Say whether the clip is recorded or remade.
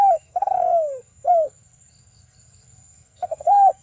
remade